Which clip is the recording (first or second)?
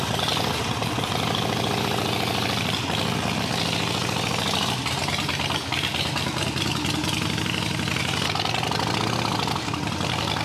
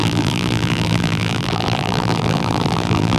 first